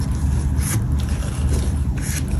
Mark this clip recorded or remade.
recorded